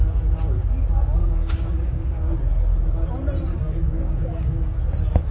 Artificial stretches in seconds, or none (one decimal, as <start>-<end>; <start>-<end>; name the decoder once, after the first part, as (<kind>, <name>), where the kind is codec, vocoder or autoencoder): 1.2-2.4 (codec, DAC); 3.5-4.8